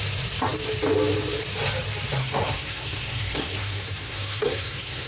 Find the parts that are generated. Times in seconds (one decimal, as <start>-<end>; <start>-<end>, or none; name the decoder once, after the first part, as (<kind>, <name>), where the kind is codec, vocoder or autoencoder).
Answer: 2.2-5.1 (codec, SNAC)